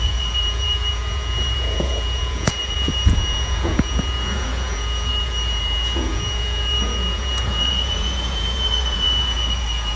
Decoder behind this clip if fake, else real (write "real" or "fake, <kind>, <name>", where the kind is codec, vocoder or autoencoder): fake, vocoder, Vocos